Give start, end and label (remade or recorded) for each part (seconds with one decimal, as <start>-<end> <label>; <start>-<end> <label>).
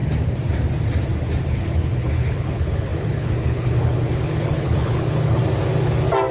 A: 0.0-1.4 recorded; 1.4-5.4 remade; 5.4-6.3 recorded